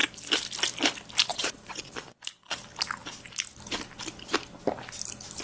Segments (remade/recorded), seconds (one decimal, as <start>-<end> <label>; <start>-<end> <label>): 0.0-1.3 recorded; 1.3-2.2 remade; 2.2-5.4 recorded